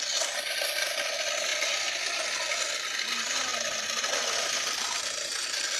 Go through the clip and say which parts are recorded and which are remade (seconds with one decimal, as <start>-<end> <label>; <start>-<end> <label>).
0.0-5.8 recorded